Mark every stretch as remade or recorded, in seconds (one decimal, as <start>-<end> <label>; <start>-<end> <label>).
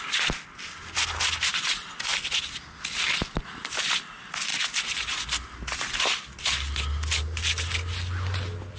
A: 0.0-8.8 recorded